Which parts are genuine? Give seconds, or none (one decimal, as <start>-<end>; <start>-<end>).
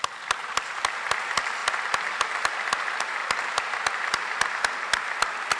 0.0-5.6